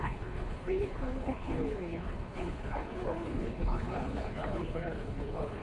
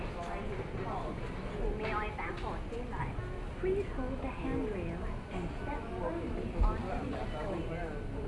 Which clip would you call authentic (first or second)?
second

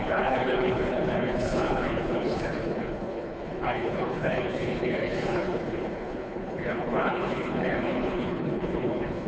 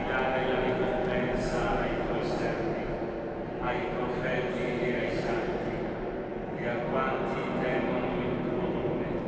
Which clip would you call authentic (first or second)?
second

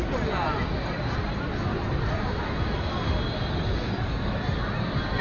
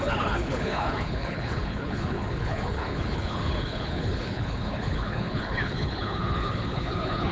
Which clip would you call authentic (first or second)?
first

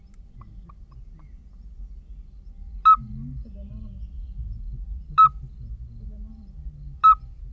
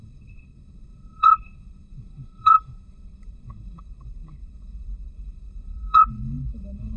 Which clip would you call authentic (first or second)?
first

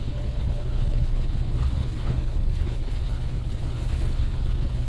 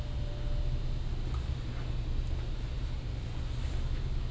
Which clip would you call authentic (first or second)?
second